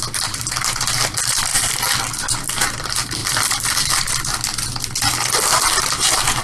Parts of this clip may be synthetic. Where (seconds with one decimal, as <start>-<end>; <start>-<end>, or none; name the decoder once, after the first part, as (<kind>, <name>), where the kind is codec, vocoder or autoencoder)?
none